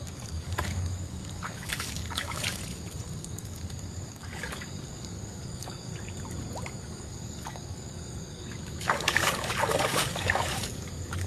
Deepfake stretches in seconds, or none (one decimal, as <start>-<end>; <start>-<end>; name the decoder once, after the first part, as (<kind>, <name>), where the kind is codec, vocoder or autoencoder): 0.0-2.6 (codec, DAC); 3.2-5.9; 6.8-11.3